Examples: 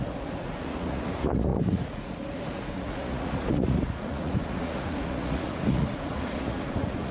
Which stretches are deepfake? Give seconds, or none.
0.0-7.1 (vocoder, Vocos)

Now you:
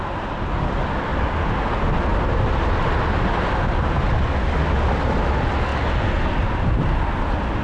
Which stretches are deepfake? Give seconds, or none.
none

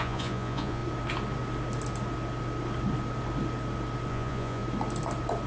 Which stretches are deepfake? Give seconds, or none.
0.0-0.8 (vocoder, Vocos); 4.1-4.6

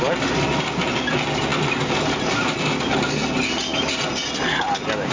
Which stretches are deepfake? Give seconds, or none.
none

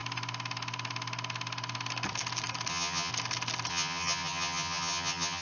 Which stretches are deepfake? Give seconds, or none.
2.7-3.1 (vocoder, HiFi-GAN); 3.7-5.4

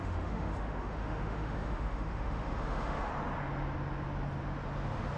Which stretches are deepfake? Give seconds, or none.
0.0-3.1 (autoencoder, DAC-VAE)